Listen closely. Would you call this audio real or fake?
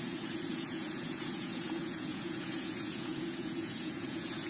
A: fake